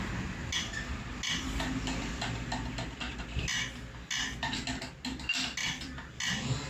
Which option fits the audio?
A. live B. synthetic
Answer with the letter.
A